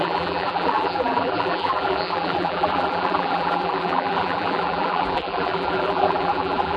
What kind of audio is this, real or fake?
fake